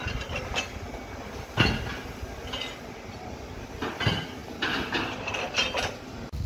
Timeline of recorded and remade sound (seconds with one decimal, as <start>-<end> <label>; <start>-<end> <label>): 0.0-6.5 recorded